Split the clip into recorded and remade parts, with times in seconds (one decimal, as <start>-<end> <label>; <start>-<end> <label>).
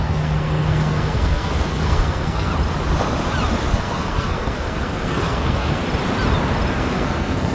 0.0-2.5 remade; 2.5-3.7 recorded; 3.7-5.8 remade; 5.8-6.7 recorded; 6.7-7.5 remade